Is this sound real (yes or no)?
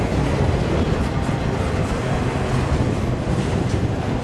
yes